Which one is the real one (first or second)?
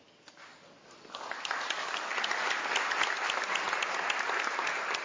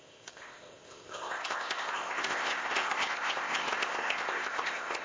first